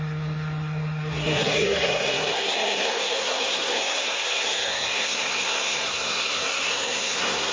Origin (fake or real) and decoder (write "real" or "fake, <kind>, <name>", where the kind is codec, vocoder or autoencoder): fake, codec, SNAC